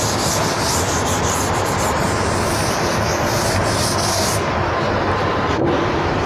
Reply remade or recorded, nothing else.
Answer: recorded